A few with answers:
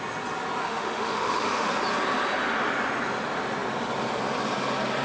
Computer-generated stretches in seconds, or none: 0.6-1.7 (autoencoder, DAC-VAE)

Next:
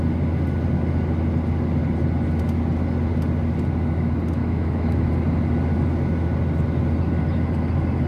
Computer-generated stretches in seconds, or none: 4.4-5.1 (autoencoder, DAC-VAE)

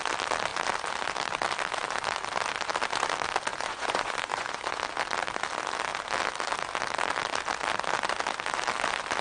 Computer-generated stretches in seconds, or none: 3.5-4.8 (vocoder, Vocos)

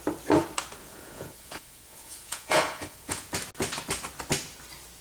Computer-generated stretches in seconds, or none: 0.8-3.3 (vocoder, Vocos)

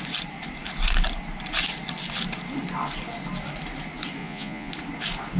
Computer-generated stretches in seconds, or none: 4.2-4.7 (vocoder, Vocos)

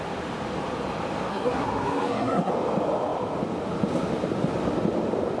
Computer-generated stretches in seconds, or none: 1.3-2.5 (codec, SNAC)